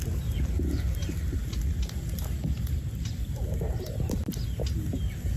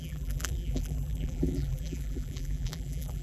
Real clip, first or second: first